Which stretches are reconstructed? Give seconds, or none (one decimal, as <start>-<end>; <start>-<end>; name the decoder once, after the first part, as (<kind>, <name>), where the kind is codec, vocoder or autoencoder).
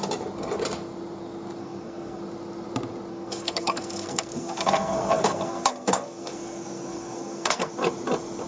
1.6-2.2 (codec, SNAC); 3.1-7.7